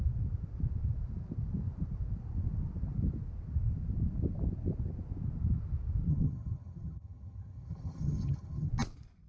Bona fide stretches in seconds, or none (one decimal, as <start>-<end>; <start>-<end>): 0.0-6.1; 8.7-9.3